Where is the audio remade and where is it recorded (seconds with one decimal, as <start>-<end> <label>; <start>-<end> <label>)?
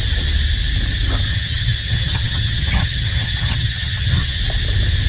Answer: 0.0-1.3 recorded; 1.3-4.4 remade; 4.4-5.1 recorded